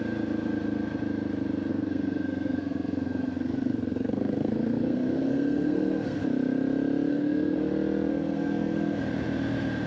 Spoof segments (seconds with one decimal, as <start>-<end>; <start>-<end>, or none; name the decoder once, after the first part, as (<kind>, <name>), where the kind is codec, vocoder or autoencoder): 1.7-6.2 (codec, SNAC); 7.1-7.7; 8.1-9.0

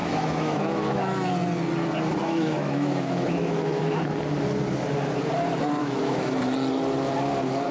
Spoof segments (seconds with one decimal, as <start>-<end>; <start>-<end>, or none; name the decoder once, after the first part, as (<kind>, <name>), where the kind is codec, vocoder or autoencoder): 0.0-1.3 (autoencoder, DAC-VAE); 2.2-3.8; 5.8-6.4

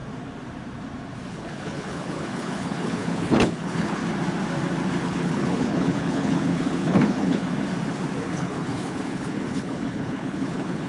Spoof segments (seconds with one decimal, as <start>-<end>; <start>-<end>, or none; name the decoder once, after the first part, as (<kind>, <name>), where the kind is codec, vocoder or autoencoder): 1.3-4.0 (codec, HILCodec); 5.0-7.4; 8.2-10.9

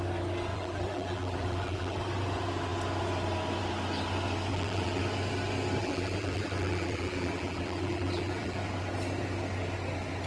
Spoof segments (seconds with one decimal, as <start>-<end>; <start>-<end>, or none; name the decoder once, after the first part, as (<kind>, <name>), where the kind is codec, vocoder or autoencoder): 0.5-2.0 (vocoder, BigVGAN v2); 4.5-5.0; 5.8-8.6